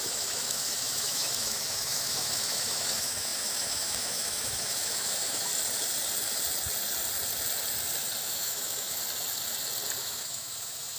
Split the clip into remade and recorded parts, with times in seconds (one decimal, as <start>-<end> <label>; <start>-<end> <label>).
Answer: 0.0-5.5 remade; 5.5-8.3 recorded; 8.3-9.0 remade; 9.0-10.0 recorded; 10.0-11.0 remade